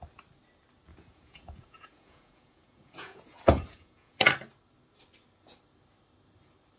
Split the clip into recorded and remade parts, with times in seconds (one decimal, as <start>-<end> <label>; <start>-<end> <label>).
0.0-0.9 recorded; 0.9-4.3 remade; 4.3-6.8 recorded